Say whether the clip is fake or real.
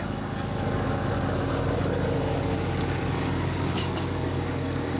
fake